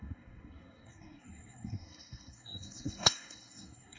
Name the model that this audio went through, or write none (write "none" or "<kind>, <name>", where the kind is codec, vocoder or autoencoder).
codec, SNAC